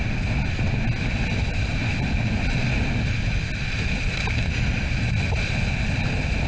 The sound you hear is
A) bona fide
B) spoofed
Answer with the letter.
A